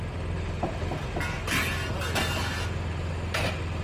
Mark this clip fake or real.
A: real